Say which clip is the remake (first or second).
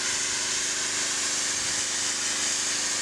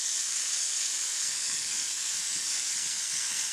second